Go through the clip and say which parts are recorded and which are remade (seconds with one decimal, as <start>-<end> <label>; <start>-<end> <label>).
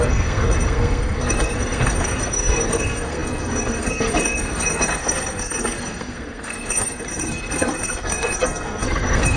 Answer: 0.0-9.4 remade